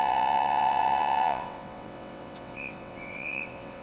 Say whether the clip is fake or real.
fake